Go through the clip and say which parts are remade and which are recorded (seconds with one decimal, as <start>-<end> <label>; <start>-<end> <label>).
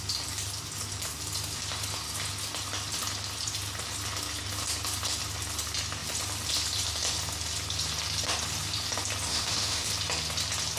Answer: 0.0-9.3 recorded; 9.3-9.9 remade; 9.9-10.8 recorded